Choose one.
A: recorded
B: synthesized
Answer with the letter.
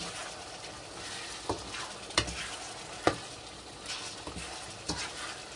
A